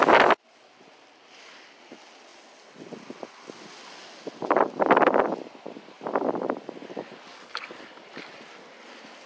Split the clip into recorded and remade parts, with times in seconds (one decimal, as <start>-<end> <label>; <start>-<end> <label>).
0.0-7.3 recorded; 7.3-8.0 remade; 8.0-9.3 recorded